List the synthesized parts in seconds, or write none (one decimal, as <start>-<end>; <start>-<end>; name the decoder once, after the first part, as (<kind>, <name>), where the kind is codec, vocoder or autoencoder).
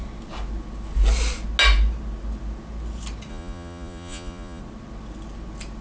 3.3-4.6 (vocoder, Vocos)